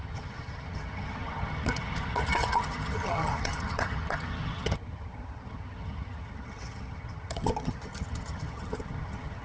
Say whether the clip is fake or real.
fake